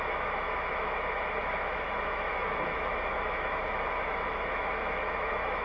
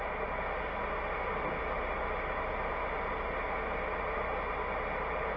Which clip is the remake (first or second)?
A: first